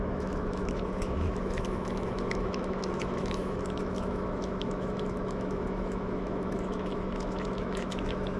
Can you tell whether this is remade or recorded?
remade